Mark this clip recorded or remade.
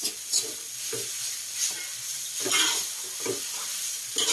recorded